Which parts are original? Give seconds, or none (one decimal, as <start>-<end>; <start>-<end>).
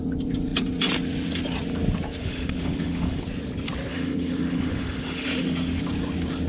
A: 0.0-2.2; 3.2-3.9; 5.8-6.5